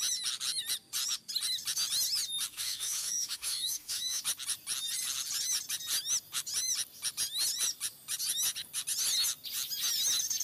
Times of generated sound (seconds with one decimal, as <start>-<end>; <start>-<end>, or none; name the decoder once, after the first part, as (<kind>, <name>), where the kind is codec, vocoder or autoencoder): 2.5-4.2 (autoencoder, DAC-VAE)